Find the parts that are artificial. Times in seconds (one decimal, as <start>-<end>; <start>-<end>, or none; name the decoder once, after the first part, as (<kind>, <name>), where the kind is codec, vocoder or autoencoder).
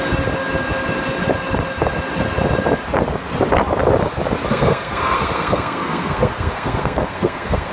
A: 4.5-7.7 (codec, SNAC)